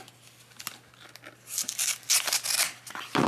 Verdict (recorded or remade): recorded